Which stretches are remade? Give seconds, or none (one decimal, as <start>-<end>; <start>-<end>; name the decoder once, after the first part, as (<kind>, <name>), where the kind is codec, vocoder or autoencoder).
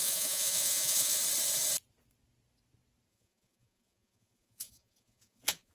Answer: 0.0-1.2 (vocoder, Vocos); 3.1-5.7